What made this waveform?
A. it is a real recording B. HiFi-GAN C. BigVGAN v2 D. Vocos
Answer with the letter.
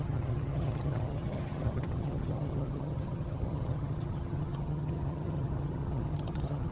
B